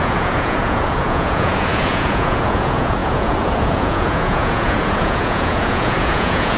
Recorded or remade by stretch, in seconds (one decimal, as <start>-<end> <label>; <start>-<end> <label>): 0.0-6.6 remade